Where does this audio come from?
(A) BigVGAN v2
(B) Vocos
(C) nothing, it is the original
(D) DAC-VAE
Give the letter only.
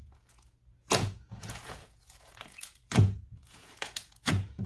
B